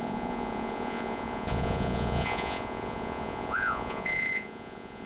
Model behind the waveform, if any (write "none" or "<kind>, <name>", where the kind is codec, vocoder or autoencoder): vocoder, Vocos